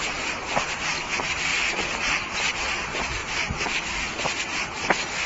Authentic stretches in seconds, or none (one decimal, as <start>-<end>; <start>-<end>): 0.0-1.5; 2.4-3.2; 4.1-5.3